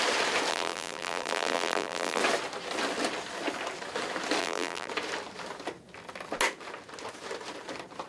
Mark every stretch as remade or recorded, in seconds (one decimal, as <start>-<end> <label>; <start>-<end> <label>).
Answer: 0.0-0.5 recorded; 0.5-2.2 remade; 2.2-4.4 recorded; 4.4-4.9 remade; 4.9-8.1 recorded